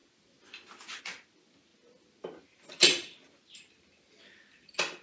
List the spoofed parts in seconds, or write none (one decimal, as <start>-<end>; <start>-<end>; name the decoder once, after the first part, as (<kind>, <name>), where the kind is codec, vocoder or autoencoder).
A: none